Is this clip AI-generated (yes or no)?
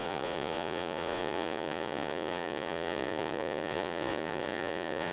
yes